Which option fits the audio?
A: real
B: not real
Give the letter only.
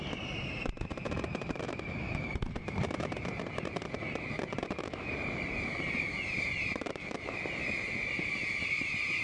B